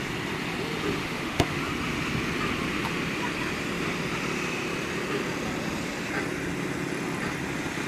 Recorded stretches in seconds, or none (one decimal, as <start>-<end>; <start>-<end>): 0.0-1.0; 1.6-7.9